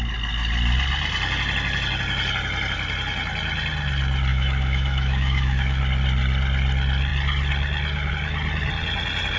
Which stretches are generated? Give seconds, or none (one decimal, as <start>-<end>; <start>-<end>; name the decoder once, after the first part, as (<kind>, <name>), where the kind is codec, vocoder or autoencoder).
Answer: 4.3-5.8 (autoencoder, DAC-VAE)